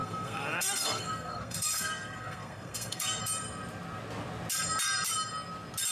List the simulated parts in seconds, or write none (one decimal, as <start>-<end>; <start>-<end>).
0.0-3.2